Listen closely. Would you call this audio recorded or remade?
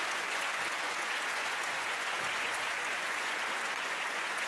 remade